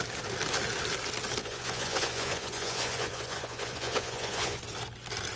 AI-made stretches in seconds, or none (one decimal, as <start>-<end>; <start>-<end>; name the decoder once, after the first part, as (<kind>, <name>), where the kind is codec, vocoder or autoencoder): 1.4-4.6 (vocoder, Vocos)